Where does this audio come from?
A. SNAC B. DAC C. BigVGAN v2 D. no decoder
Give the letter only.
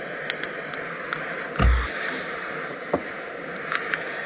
D